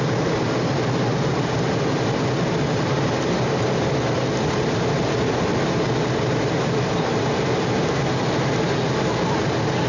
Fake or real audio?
real